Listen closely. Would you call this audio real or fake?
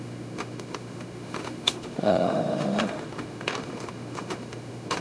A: fake